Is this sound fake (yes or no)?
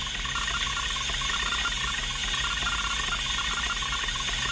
no